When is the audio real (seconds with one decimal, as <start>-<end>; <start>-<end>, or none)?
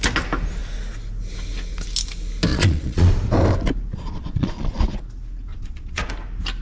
0.0-2.5; 3.1-3.9; 4.8-5.5; 6.1-6.6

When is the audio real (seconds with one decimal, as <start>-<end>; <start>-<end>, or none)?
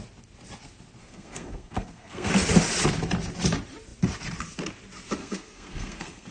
0.0-1.0; 2.3-5.2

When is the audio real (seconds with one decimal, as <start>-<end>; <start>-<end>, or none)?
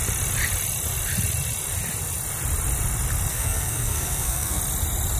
0.0-3.3; 4.6-5.2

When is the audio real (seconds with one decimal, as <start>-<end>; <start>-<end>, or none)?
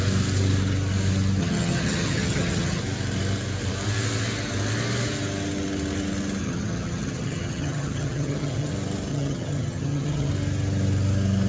0.0-1.4; 2.8-6.4; 8.7-9.1; 10.3-11.5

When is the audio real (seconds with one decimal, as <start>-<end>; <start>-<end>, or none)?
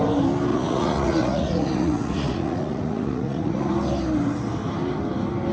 0.0-0.5; 3.7-5.5